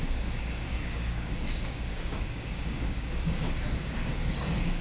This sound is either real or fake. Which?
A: fake